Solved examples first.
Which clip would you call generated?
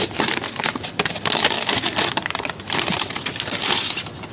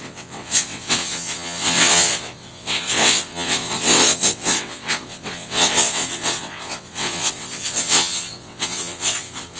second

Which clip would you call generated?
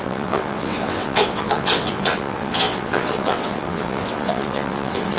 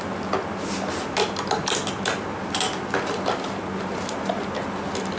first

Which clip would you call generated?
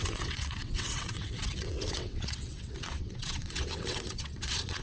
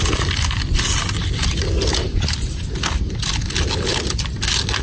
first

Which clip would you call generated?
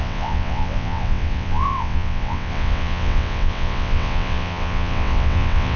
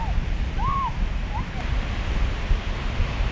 first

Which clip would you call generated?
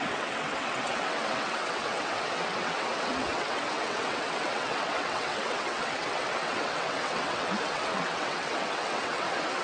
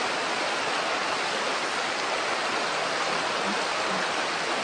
first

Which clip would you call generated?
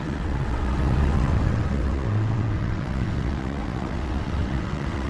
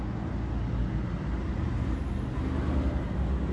first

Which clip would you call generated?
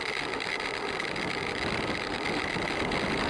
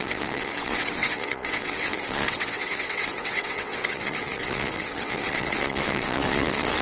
second